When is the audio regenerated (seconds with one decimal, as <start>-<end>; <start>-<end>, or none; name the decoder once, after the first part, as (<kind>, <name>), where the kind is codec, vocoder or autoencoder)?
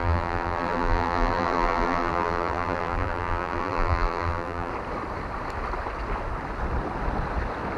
0.0-4.7 (vocoder, BigVGAN v2)